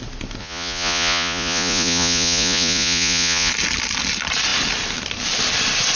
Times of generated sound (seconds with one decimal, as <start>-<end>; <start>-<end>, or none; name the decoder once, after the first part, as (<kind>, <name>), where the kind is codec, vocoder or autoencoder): 0.4-3.5 (vocoder, Vocos)